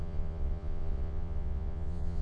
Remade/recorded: remade